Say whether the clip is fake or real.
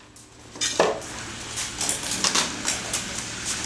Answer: real